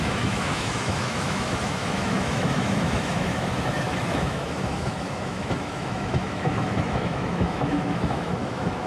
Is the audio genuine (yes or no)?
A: no